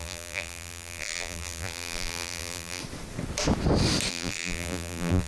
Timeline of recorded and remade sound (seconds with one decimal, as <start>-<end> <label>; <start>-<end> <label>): 0.0-2.8 remade; 2.8-4.1 recorded; 4.1-5.3 remade